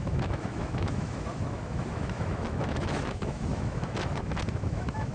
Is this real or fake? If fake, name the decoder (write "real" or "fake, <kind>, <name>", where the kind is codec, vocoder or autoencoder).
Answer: fake, autoencoder, DAC-VAE